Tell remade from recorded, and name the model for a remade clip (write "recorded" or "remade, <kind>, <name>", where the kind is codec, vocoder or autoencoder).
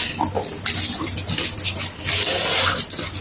recorded